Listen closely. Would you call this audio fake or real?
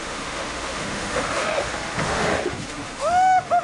fake